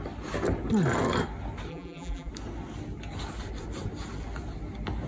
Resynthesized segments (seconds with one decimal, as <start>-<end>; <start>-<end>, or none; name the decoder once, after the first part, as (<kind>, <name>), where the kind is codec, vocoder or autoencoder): 1.7-2.3 (vocoder, BigVGAN v2)